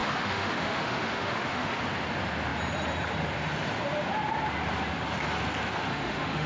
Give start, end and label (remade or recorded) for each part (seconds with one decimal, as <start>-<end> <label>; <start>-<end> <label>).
0.0-1.8 remade; 1.8-5.9 recorded; 5.9-6.5 remade